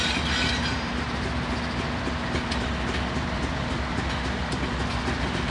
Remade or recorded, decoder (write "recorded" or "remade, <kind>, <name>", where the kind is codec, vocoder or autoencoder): recorded